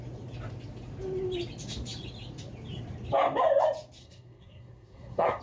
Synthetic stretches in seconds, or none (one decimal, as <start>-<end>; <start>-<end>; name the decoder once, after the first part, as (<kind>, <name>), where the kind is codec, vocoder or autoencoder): 4.0-5.4 (codec, SNAC)